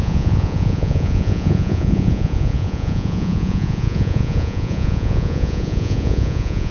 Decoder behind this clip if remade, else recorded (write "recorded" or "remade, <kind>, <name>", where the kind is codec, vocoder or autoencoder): remade, vocoder, Vocos